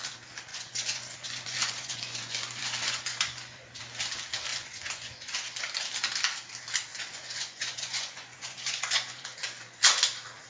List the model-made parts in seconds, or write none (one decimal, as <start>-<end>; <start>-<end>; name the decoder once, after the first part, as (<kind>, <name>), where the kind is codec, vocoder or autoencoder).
0.5-3.8 (vocoder, Vocos); 4.5-5.6; 6.9-9.8

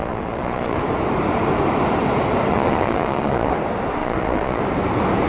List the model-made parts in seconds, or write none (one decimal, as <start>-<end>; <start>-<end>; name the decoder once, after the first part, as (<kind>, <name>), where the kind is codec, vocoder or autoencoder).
0.0-0.8 (vocoder, Vocos); 2.5-3.5; 4.0-4.6

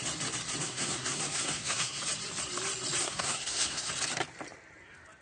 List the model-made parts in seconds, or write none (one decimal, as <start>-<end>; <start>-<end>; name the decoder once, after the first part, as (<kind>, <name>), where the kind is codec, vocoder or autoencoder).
0.6-2.0 (codec, SNAC); 3.0-3.9

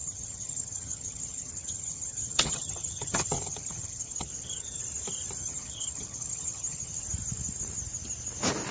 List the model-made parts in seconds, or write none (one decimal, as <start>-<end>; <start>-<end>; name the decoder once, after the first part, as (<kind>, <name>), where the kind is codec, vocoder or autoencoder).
0.0-4.8 (vocoder, HiFi-GAN); 5.4-7.0